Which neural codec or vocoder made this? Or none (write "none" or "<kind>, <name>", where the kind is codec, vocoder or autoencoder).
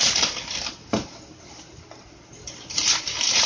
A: none